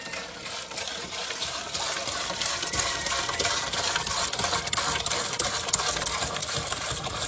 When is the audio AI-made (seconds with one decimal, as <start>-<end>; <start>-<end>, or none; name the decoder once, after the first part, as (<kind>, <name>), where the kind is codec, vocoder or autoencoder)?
0.9-4.1 (vocoder, BigVGAN v2); 6.4-7.3